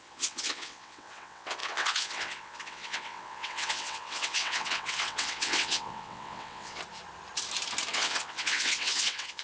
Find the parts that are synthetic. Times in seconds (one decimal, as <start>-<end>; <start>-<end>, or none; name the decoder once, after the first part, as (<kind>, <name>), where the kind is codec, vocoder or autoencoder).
0.0-6.8 (vocoder, WaveNeXt); 7.9-9.4